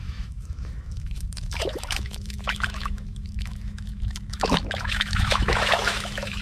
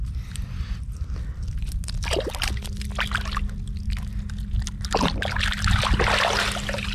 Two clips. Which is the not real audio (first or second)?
first